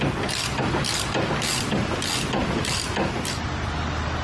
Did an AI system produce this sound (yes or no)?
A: no